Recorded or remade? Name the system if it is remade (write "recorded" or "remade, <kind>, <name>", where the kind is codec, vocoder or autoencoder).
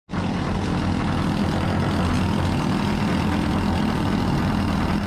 recorded